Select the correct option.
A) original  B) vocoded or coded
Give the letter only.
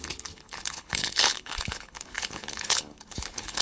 B